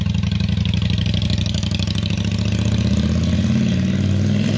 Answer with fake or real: real